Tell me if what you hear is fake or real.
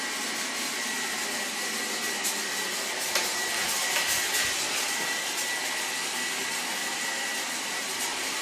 real